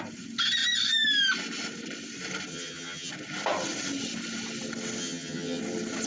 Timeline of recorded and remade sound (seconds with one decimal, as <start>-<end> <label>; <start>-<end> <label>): 0.0-2.5 recorded; 2.5-3.1 remade; 3.1-5.0 recorded; 5.0-5.6 remade; 5.6-6.1 recorded